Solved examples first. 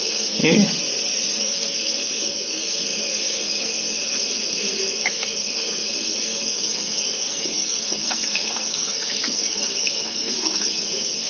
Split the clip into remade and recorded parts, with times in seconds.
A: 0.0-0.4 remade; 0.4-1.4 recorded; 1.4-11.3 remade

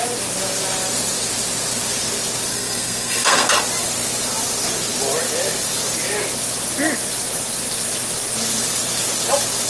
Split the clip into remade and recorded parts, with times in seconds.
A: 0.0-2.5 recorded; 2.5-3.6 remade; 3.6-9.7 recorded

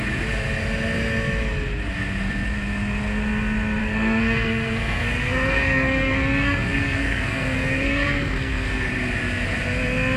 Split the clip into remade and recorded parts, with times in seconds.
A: 0.0-3.8 recorded; 3.8-8.9 remade; 8.9-10.2 recorded